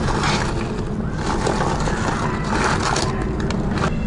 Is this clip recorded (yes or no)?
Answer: yes